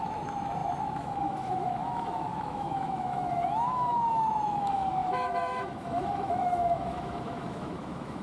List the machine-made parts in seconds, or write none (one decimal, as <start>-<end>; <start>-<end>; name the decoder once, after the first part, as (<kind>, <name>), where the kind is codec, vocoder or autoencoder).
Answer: 0.0-8.2 (autoencoder, DAC-VAE)